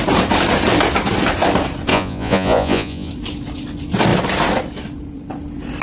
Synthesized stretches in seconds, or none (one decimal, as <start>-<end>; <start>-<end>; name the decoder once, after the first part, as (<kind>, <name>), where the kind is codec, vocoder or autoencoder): 1.9-3.1 (vocoder, Vocos)